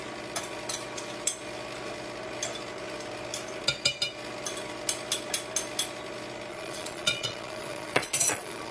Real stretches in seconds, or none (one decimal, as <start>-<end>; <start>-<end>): 0.0-6.5